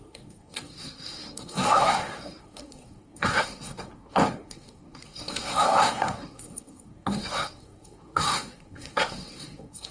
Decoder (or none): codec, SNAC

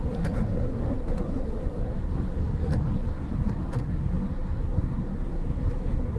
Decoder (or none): codec, SNAC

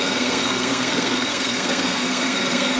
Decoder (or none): codec, SNAC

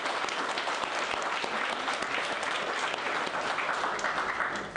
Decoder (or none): none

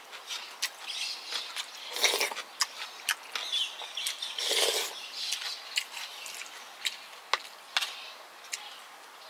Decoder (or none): none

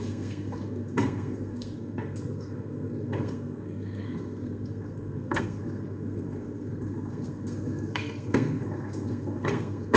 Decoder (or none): codec, SNAC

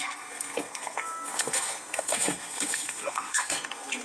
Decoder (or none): codec, SNAC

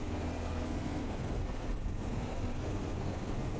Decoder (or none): codec, SNAC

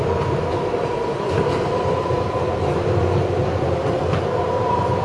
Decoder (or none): none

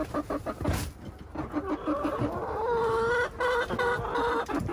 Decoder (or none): none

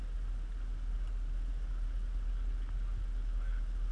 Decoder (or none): none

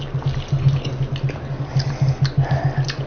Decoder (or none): none